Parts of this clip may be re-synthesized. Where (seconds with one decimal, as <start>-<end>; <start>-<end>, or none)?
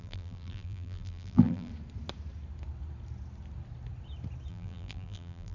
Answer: 0.0-1.7; 4.5-5.5